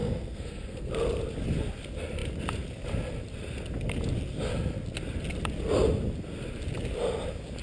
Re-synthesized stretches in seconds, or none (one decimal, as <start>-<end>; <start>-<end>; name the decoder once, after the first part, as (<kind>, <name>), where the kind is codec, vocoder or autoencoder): 0.0-0.9 (codec, SNAC)